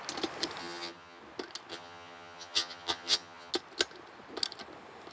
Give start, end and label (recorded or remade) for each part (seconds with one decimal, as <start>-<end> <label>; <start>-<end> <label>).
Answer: 0.0-0.6 recorded; 0.6-1.2 remade; 1.2-1.7 recorded; 1.7-3.5 remade; 3.5-5.1 recorded